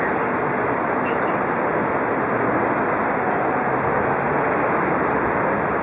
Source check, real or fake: real